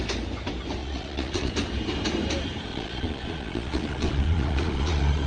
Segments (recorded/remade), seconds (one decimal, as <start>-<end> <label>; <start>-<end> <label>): 0.0-0.8 recorded; 0.8-1.5 remade; 1.5-2.7 recorded; 2.7-5.3 remade

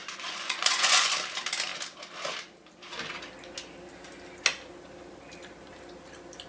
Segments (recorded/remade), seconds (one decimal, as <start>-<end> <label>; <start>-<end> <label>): 0.0-1.1 remade; 1.1-6.5 recorded

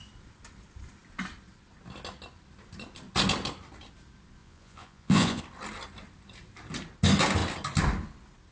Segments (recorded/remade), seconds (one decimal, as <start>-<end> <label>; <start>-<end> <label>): 0.0-4.4 recorded; 4.4-5.4 remade; 5.4-8.5 recorded

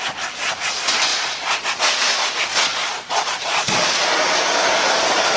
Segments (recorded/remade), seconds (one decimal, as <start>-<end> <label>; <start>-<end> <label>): 0.0-1.1 recorded; 1.1-1.7 remade; 1.7-2.5 recorded; 2.5-4.1 remade; 4.1-5.4 recorded

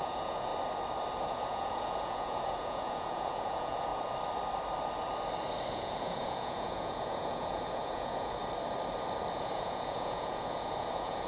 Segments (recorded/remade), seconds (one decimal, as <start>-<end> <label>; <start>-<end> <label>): 0.0-0.5 remade; 0.5-1.2 recorded; 1.2-3.9 remade; 3.9-5.7 recorded; 5.7-8.4 remade; 8.4-9.3 recorded; 9.3-11.3 remade

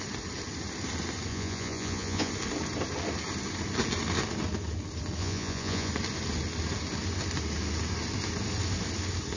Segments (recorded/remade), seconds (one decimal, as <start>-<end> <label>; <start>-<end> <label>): 0.0-1.3 recorded; 1.3-2.3 remade; 2.3-5.2 recorded; 5.2-5.9 remade; 5.9-9.4 recorded